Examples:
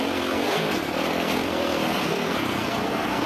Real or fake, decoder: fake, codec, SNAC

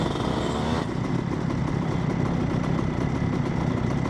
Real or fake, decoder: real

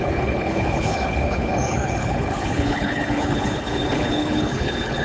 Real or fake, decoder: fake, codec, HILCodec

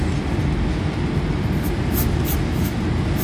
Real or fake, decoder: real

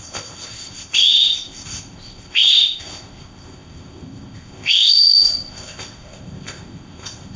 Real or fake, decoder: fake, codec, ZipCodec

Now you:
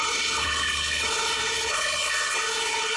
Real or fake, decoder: fake, codec, HILCodec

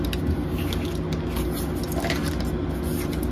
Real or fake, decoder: real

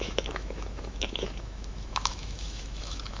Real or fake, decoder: fake, autoencoder, DAC-VAE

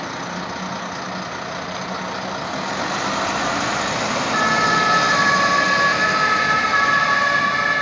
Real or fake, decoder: real